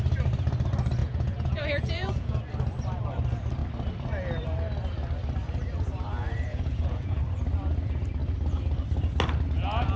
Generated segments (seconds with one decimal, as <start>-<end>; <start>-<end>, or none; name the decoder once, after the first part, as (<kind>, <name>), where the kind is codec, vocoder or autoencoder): 1.0-2.4 (vocoder, Vocos); 6.5-7.2